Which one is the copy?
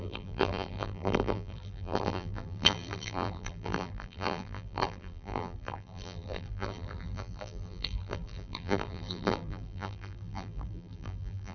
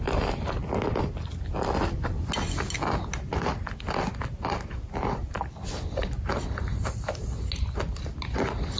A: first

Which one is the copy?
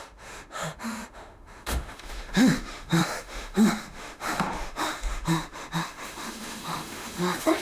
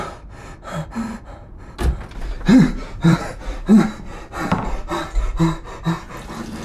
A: first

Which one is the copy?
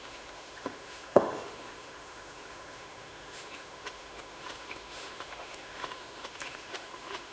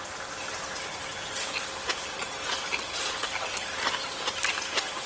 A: first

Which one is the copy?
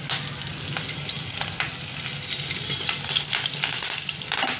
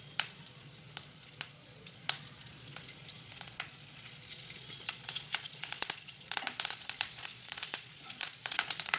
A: second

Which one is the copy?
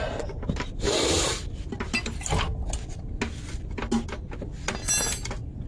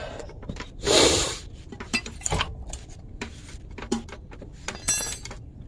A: second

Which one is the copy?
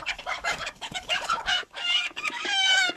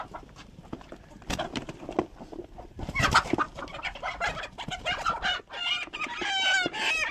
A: first